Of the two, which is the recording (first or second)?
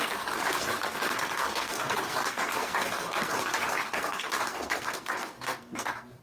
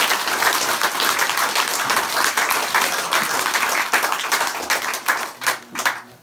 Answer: second